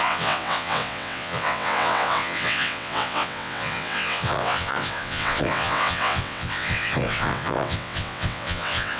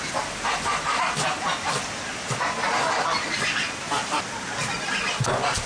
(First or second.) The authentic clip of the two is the second